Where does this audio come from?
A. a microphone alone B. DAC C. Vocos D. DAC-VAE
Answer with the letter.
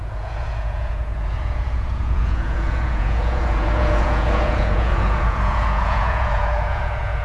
C